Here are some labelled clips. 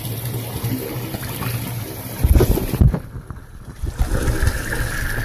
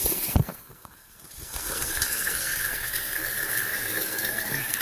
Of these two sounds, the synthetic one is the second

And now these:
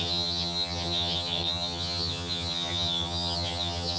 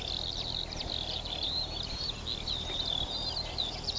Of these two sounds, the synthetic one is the first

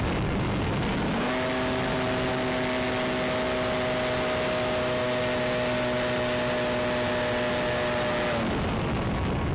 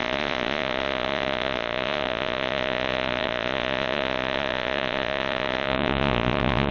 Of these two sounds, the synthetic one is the second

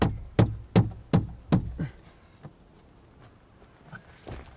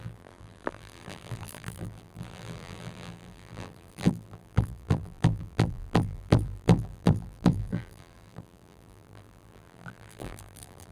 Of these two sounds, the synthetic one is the second